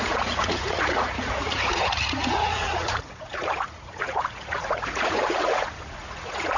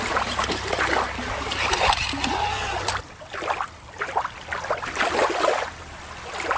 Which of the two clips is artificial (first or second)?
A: first